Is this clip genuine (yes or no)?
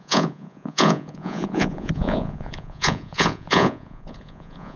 no